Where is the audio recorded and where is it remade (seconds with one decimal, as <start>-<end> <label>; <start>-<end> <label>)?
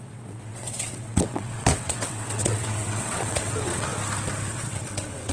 0.0-3.9 remade; 3.9-4.5 recorded; 4.5-5.3 remade